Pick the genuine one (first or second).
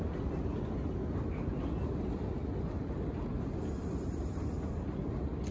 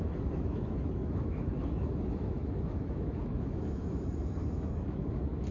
first